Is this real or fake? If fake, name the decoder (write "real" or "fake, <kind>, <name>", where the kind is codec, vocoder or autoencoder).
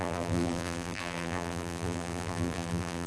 fake, vocoder, BigVGAN v2